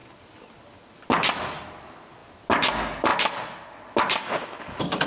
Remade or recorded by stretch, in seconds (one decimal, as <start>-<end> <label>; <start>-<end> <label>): 0.0-5.1 recorded